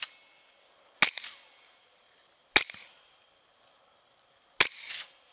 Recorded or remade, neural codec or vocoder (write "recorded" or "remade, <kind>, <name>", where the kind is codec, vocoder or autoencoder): recorded